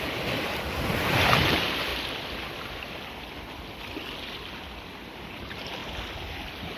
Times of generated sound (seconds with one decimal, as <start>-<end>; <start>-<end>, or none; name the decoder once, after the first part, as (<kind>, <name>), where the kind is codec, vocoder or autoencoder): 0.0-1.9 (vocoder, BigVGAN v2); 5.3-5.8